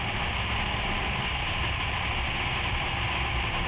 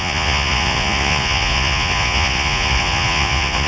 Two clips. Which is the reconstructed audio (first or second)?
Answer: second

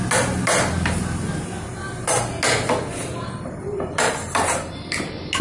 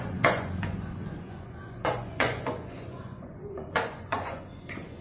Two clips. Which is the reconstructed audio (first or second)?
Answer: second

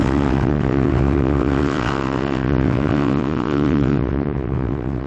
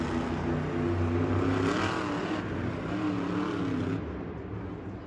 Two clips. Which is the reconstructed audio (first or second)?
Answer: first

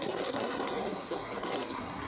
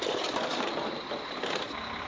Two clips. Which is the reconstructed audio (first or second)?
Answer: first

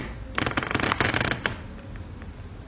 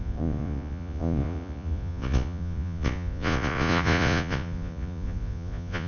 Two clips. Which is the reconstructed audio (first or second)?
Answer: second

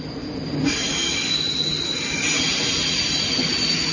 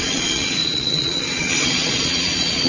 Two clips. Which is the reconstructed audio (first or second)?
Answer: second